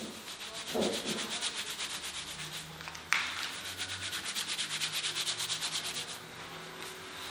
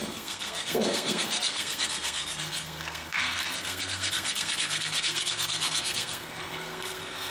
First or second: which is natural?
first